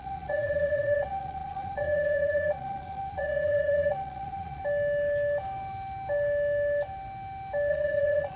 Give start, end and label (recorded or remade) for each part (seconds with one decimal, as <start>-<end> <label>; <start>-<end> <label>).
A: 0.0-4.6 remade; 4.6-7.7 recorded; 7.7-8.4 remade